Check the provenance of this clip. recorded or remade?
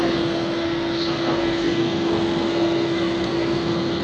remade